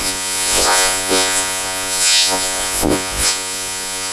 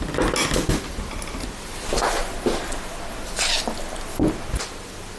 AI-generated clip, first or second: first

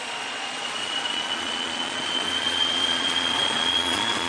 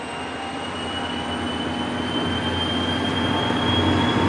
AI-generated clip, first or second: first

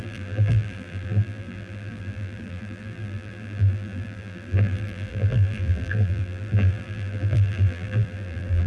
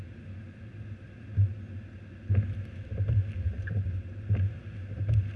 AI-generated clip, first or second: first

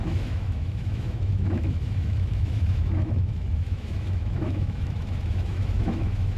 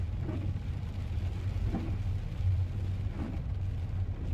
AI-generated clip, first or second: first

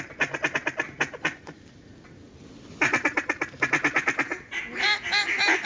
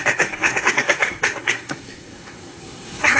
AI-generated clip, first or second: second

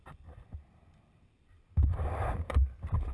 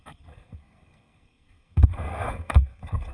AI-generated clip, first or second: second